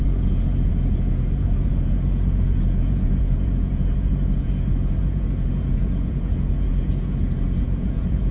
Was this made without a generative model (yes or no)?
no